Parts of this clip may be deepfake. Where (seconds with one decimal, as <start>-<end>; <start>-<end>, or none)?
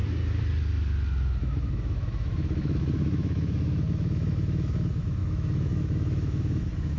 1.4-7.0